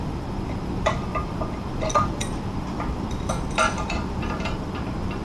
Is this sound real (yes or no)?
no